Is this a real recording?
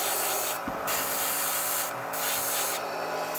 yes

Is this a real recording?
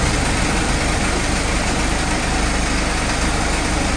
yes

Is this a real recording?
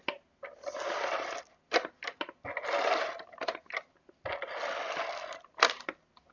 yes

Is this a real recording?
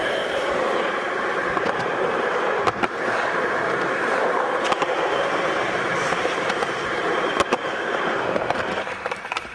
no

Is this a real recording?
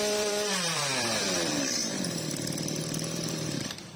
no